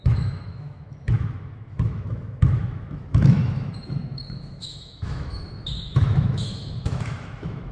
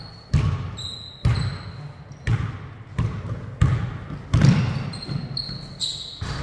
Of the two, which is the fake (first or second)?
first